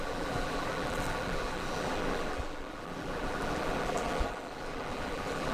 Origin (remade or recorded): remade